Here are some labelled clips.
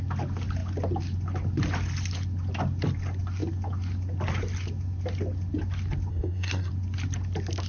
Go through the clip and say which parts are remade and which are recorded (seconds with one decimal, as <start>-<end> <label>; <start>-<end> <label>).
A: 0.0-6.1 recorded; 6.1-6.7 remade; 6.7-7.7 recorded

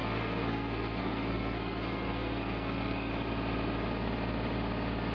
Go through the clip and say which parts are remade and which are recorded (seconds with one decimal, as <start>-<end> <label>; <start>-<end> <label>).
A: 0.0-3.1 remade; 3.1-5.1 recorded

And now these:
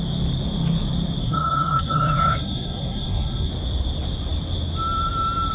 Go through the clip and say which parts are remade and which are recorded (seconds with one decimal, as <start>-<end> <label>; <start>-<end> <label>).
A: 0.0-1.2 recorded; 1.2-3.5 remade; 3.5-5.5 recorded

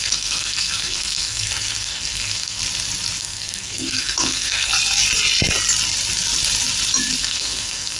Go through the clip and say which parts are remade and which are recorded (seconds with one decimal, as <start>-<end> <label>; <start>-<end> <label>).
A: 0.0-2.6 remade; 2.6-3.2 recorded; 3.2-4.7 remade; 4.7-7.2 recorded; 7.2-8.0 remade

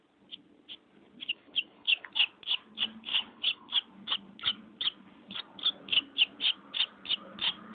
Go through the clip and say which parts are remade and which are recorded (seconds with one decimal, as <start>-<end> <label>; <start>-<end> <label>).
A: 0.0-1.3 recorded; 1.3-2.1 remade; 2.1-3.1 recorded; 3.1-3.7 remade; 3.7-7.7 recorded